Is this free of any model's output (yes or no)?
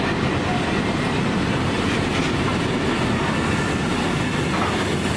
yes